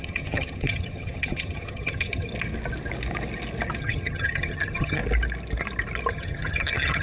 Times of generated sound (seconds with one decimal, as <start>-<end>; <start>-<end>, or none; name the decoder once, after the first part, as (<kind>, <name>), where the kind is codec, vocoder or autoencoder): 0.0-2.3 (vocoder, HiFi-GAN); 3.8-5.0; 6.1-7.0